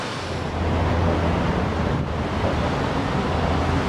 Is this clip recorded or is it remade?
recorded